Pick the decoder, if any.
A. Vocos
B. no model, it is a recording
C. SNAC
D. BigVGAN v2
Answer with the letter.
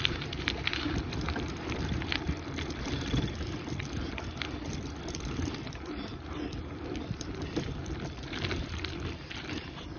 D